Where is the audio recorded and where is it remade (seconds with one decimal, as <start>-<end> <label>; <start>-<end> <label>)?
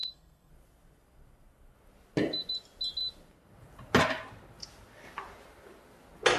0.0-0.5 remade; 0.5-6.4 recorded